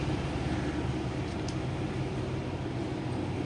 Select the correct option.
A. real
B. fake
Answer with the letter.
A